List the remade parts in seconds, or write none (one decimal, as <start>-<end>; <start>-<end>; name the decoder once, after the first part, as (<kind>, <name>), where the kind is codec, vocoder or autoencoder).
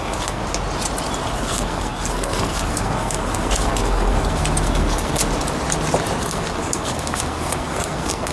0.0-0.4 (codec, SNAC); 1.4-5.2; 6.2-8.3